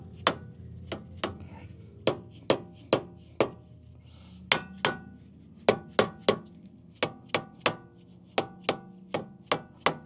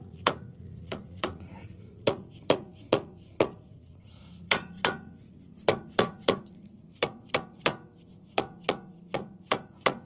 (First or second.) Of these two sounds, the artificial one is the second